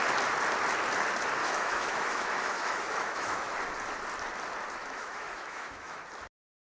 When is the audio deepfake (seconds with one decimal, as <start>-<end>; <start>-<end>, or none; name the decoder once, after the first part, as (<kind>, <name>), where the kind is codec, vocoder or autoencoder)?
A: 1.4-3.5 (autoencoder, DAC-VAE); 4.8-6.0